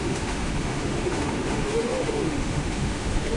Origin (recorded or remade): remade